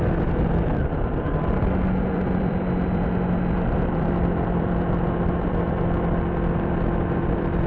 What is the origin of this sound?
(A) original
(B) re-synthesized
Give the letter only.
B